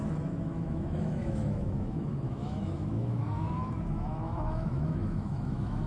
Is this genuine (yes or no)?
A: no